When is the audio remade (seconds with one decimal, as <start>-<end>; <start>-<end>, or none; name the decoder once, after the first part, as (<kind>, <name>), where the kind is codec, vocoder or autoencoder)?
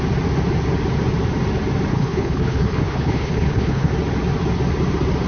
1.9-3.9 (codec, HILCodec)